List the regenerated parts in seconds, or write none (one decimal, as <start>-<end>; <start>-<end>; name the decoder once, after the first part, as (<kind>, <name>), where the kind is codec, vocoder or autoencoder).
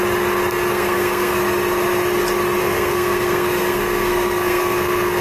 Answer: 0.7-1.4 (codec, SNAC); 2.6-5.2